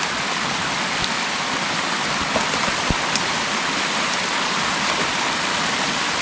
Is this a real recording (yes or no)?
yes